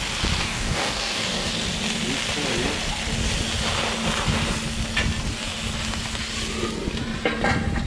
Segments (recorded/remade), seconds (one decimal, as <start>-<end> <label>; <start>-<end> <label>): 0.0-0.4 recorded; 0.4-1.5 remade; 1.5-7.9 recorded

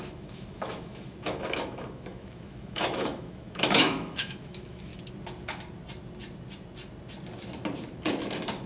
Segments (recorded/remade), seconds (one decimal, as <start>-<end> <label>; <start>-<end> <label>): 0.0-4.9 remade; 4.9-8.2 recorded; 8.2-8.7 remade

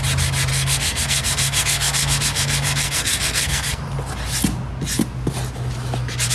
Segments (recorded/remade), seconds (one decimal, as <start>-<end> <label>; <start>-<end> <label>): 0.0-0.5 recorded; 0.5-3.8 remade; 3.8-6.3 recorded

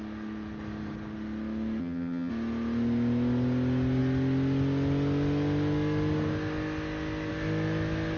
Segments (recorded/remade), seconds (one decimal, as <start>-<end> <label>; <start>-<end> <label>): 0.0-1.8 recorded; 1.8-2.3 remade; 2.3-8.2 recorded